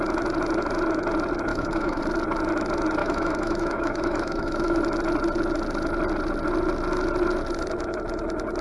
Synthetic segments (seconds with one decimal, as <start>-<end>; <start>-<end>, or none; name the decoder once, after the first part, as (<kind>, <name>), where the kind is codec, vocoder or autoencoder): 1.5-2.0 (autoencoder, DAC-VAE); 3.0-4.8